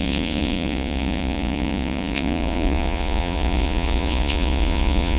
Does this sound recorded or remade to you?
remade